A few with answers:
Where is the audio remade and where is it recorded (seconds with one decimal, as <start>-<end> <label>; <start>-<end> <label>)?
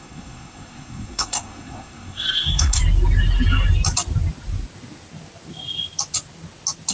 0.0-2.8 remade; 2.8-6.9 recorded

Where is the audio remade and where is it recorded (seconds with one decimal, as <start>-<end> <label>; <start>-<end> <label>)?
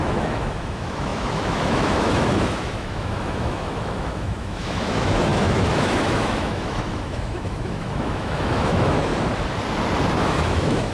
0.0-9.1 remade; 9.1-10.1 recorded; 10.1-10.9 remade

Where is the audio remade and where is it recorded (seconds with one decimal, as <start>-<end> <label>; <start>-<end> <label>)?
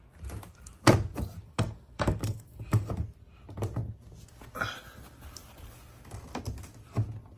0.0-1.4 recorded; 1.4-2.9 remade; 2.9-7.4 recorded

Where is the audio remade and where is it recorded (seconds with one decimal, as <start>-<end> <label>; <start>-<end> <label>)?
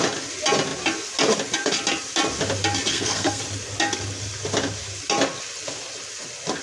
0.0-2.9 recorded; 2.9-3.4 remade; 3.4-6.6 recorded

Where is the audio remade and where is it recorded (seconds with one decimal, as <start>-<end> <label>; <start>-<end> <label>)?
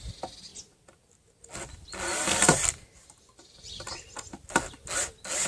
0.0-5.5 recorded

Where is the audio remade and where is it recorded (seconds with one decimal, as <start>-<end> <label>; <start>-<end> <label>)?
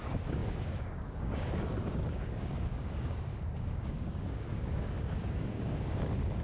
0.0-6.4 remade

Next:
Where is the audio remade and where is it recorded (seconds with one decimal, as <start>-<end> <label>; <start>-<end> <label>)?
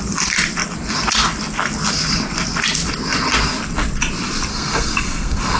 0.0-4.5 recorded; 4.5-5.6 remade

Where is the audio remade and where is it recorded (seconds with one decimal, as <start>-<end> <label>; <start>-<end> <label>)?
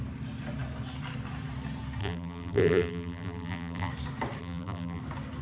0.0-2.0 recorded; 2.0-3.9 remade; 3.9-4.4 recorded; 4.4-5.0 remade; 5.0-5.4 recorded